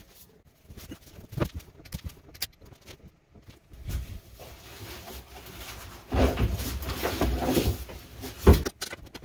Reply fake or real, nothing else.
real